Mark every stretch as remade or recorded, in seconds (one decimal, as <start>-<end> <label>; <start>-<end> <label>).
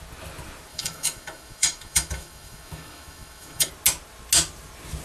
0.0-0.7 recorded; 0.7-3.7 remade; 3.7-5.0 recorded